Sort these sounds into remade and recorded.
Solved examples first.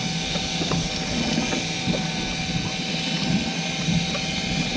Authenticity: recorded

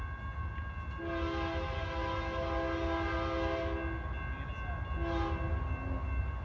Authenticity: recorded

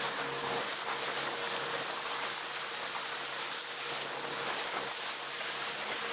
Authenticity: recorded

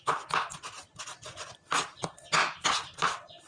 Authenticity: recorded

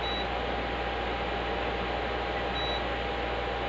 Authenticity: recorded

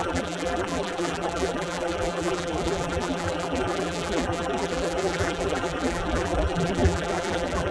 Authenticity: remade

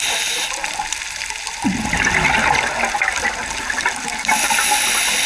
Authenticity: recorded